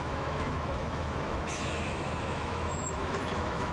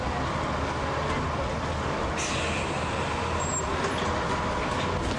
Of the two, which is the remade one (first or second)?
first